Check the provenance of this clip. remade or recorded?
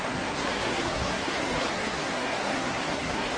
remade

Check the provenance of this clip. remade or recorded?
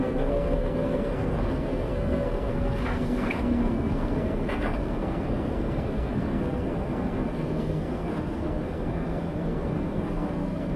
remade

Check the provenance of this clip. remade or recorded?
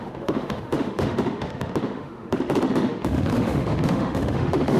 remade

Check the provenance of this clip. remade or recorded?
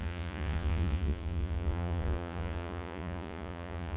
remade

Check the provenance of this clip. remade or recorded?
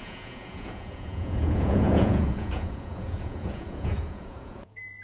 remade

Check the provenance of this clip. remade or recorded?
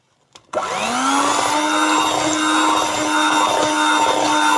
recorded